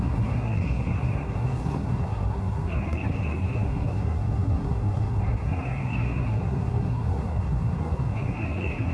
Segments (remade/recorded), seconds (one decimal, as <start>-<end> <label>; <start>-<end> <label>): 0.0-8.9 remade